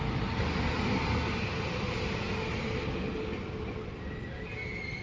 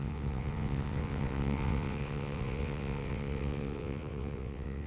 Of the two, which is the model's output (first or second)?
second